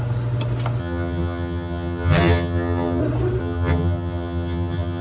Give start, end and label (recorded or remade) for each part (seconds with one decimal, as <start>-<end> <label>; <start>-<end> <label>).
0.0-0.8 recorded; 0.8-3.0 remade; 3.0-3.4 recorded; 3.4-5.0 remade